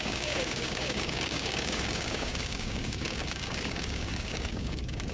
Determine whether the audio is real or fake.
fake